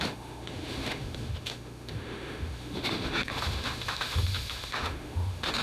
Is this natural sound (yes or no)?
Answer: no